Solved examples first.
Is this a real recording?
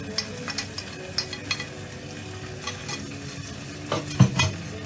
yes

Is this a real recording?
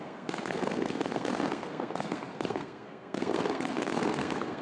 no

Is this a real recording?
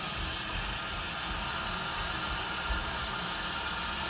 yes